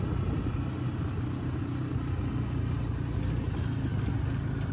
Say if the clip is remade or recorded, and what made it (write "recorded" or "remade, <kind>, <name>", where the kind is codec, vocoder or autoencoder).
recorded